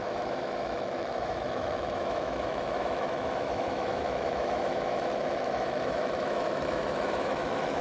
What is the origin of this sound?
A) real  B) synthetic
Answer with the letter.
B